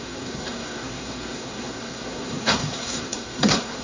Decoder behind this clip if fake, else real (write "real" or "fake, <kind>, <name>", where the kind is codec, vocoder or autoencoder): fake, codec, SNAC